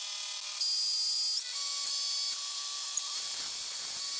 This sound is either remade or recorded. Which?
recorded